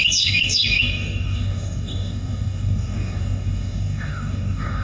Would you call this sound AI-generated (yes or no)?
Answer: yes